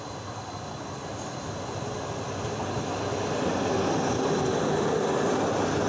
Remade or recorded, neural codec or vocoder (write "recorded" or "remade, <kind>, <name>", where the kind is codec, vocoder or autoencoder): recorded